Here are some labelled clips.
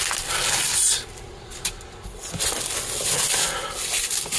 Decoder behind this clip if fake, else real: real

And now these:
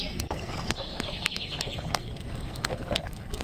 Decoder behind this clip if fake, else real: fake, codec, SNAC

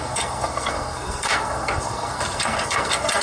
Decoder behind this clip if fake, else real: fake, codec, SNAC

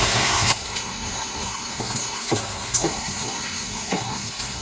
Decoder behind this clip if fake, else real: fake, codec, SNAC